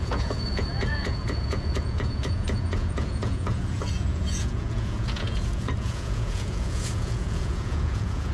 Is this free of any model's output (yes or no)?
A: no